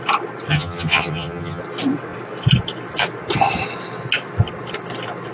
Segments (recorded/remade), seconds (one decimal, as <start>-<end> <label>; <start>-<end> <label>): 0.0-0.5 recorded; 0.5-1.6 remade; 1.6-5.3 recorded